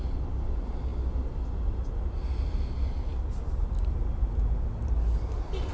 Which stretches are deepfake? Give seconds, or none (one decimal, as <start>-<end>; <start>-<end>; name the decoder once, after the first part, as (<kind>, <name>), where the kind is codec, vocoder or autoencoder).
none